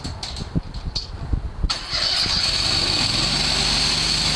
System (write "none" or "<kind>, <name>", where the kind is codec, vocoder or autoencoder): none